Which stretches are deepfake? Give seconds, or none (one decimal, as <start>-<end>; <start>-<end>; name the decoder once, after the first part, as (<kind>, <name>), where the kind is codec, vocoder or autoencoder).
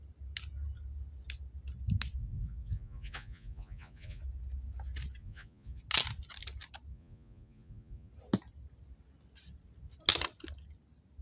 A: 2.2-4.2 (vocoder, Vocos); 5.2-5.8; 6.9-8.1